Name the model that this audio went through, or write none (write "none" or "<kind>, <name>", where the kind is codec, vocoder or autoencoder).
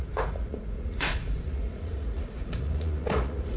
vocoder, Vocos